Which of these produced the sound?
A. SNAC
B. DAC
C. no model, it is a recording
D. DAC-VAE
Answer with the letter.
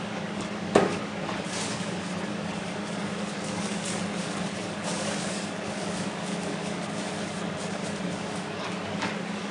B